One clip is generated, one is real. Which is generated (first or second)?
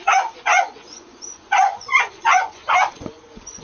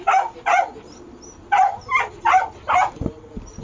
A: first